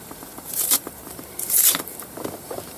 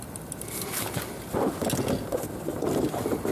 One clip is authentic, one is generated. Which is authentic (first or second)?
second